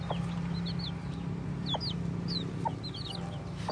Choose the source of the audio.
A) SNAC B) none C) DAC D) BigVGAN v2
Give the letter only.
B